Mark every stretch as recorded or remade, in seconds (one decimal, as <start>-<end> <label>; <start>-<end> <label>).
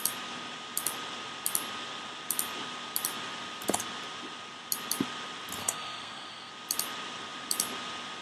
0.0-5.6 recorded; 5.6-6.5 remade; 6.5-8.2 recorded